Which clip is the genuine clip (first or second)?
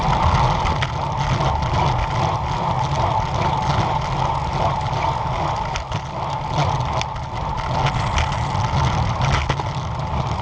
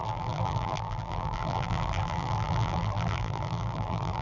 first